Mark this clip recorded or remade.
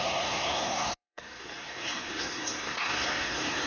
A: remade